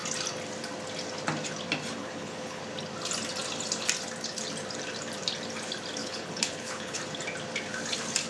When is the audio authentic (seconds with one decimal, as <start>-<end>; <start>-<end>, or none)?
0.0-2.0; 2.6-6.0; 7.0-8.3